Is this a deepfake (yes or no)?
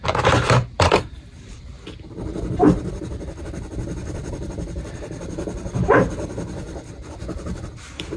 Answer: yes